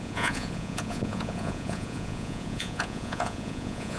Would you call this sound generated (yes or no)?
yes